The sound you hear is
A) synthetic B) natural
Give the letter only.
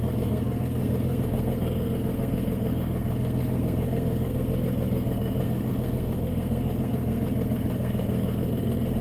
A